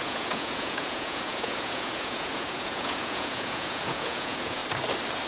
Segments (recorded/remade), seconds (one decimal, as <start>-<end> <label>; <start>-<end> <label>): 0.0-4.6 remade; 4.6-5.3 recorded